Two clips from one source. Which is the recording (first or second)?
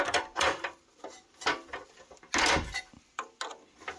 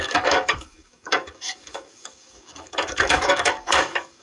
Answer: first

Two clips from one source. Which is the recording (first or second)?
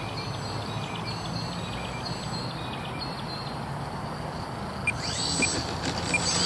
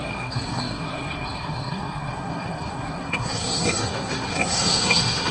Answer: first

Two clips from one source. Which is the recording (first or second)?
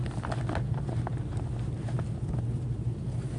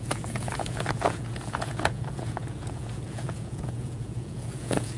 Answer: first